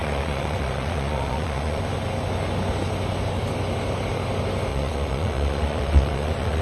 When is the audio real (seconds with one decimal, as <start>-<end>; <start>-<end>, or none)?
1.8-4.7